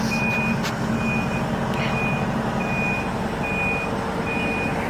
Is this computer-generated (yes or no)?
no